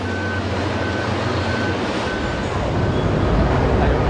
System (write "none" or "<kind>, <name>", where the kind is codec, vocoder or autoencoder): none